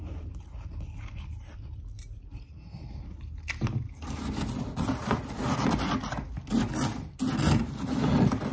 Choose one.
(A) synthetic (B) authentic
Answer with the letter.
B